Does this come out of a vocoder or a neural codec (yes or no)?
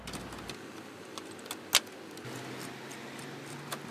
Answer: no